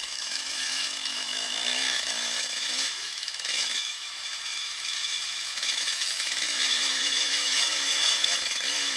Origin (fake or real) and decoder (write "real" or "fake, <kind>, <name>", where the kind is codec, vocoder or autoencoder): fake, autoencoder, DAC-VAE